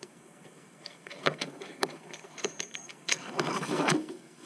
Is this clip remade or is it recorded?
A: remade